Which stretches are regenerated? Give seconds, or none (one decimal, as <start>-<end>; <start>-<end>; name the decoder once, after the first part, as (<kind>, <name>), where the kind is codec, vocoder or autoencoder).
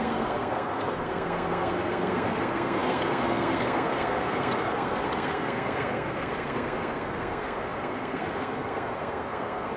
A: 0.0-9.8 (codec, SNAC)